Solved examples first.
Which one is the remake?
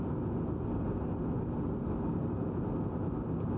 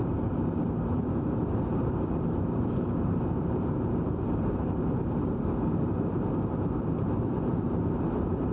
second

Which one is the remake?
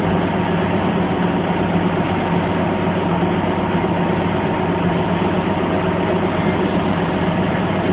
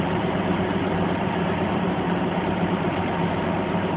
second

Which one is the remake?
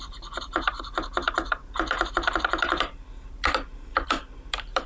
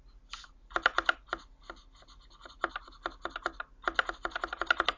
first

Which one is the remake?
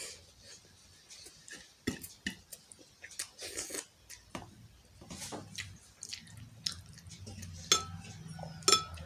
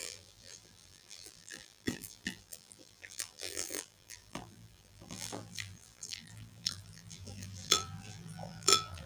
second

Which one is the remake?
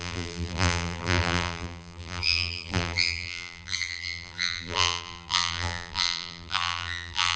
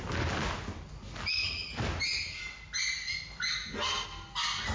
first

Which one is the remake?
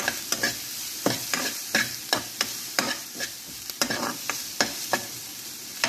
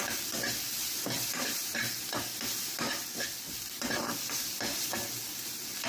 first